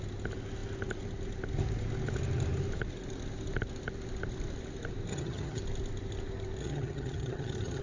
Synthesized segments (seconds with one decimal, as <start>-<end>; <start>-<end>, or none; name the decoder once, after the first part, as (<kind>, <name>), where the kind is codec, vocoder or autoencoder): 5.1-5.6 (vocoder, HiFi-GAN); 6.6-7.8